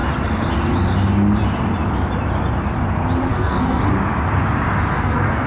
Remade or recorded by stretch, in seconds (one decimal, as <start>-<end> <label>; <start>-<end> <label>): 0.0-3.3 recorded; 3.3-3.8 remade; 3.8-4.9 recorded; 4.9-5.5 remade